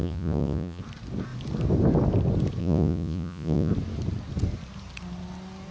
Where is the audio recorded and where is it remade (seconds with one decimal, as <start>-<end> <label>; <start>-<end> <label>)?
0.0-0.8 remade; 0.8-2.6 recorded; 2.6-3.7 remade; 3.7-5.7 recorded